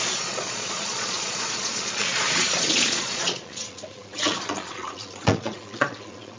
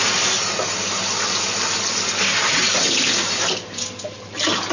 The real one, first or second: second